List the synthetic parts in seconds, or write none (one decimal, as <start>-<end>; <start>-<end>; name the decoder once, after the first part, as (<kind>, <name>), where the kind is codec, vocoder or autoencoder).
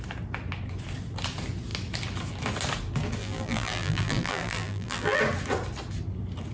3.2-5.2 (vocoder, BigVGAN v2)